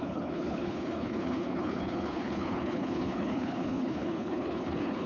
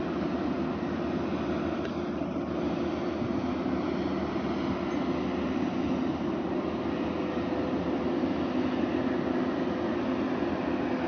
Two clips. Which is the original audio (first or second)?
second